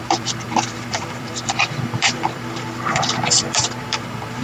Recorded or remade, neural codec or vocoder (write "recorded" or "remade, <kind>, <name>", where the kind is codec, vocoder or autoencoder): remade, vocoder, BigVGAN v2